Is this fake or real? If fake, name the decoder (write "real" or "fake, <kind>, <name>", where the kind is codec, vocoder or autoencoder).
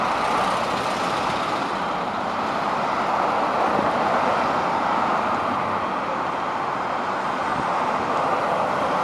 real